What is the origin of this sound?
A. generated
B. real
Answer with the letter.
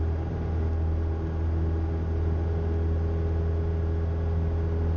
B